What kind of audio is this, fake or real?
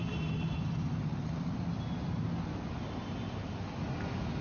real